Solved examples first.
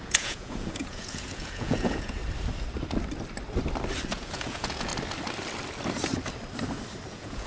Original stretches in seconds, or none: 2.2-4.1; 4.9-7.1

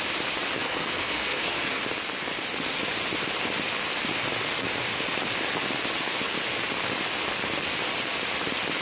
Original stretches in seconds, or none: 0.0-0.6; 1.8-8.8

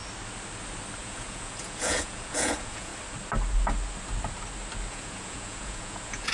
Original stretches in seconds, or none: 0.0-1.0; 2.9-4.9

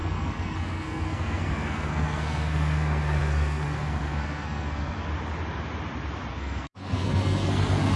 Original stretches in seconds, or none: 5.1-6.3

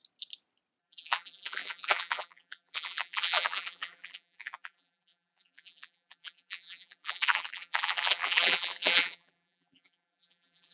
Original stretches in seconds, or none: 0.0-0.8

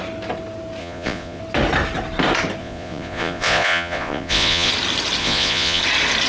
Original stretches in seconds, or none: 0.0-0.8; 1.4-2.6; 4.7-5.2; 5.8-6.3

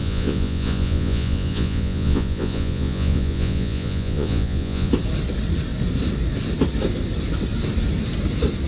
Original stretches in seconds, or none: 4.9-8.7

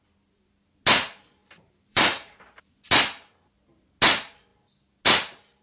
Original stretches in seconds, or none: 0.0-1.4; 2.9-5.6